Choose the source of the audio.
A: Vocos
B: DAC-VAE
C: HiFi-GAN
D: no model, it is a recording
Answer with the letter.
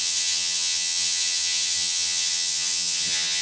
C